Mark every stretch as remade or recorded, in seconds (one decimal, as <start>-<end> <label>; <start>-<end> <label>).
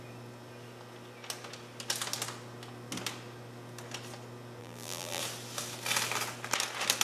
0.0-4.6 recorded; 4.6-5.2 remade; 5.2-7.0 recorded